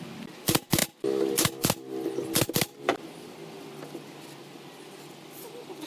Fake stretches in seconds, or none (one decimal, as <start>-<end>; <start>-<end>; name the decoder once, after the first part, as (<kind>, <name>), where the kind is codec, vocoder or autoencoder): none